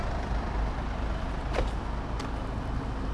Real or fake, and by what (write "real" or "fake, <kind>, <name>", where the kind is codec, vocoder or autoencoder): real